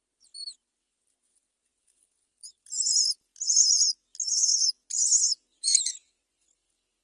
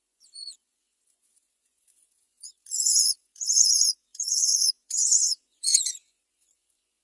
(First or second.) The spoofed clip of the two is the second